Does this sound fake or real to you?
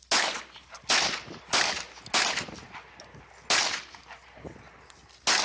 real